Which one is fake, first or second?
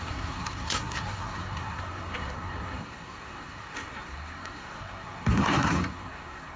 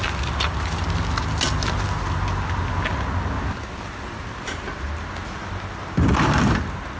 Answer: first